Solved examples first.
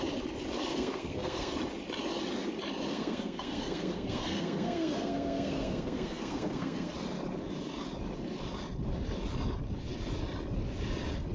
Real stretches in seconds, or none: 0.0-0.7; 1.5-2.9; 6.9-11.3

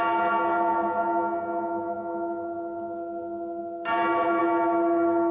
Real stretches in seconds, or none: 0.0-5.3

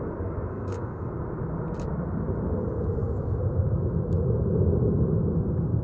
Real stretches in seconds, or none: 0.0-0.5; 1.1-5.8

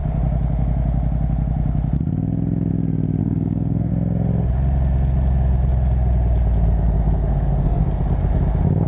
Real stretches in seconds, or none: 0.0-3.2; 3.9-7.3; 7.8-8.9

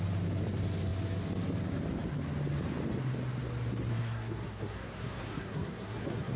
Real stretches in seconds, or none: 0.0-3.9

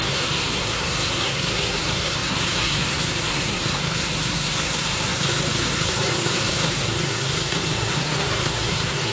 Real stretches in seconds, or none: none

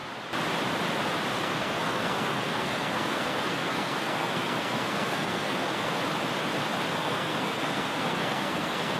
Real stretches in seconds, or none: 0.0-1.4; 6.0-7.0